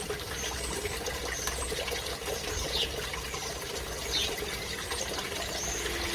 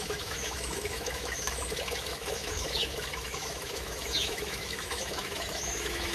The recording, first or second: first